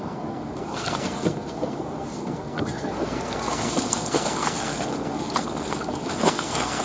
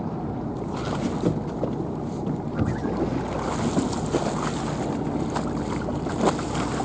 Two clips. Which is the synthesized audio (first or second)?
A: first